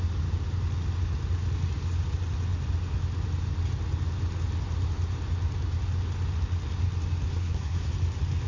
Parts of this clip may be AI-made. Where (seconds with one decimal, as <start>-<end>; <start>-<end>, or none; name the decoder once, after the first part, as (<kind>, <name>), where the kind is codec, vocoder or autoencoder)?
7.3-7.9 (codec, SNAC)